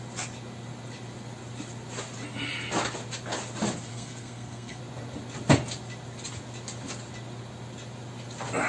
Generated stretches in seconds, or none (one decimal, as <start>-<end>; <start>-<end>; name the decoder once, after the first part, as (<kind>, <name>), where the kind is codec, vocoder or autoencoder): 3.9-4.8 (codec, SNAC)